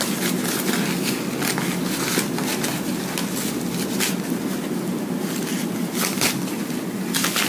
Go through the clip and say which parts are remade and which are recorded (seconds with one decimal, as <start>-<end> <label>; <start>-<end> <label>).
0.0-7.5 recorded